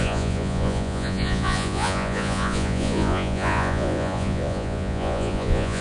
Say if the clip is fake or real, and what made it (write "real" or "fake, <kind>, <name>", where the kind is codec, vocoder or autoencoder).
fake, vocoder, Vocos